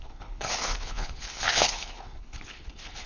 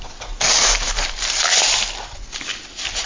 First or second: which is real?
second